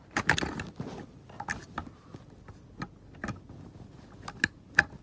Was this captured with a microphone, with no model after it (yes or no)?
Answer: yes